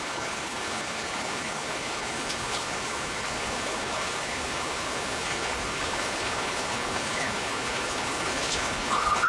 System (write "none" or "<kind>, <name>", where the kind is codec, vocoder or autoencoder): codec, HILCodec